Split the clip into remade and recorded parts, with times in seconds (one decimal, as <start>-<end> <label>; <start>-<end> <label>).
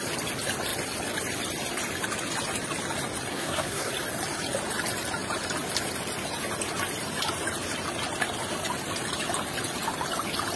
0.0-3.3 recorded; 3.3-3.9 remade; 3.9-10.6 recorded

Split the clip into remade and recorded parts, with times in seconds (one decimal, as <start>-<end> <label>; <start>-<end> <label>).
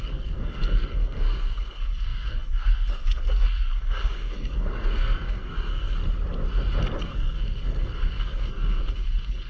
0.0-6.0 remade; 6.0-7.0 recorded; 7.0-9.5 remade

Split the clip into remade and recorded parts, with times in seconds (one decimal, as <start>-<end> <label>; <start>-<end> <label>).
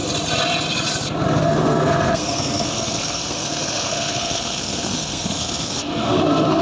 0.0-1.4 recorded; 1.4-6.6 remade